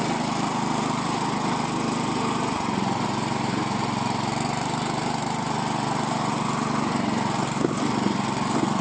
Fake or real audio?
real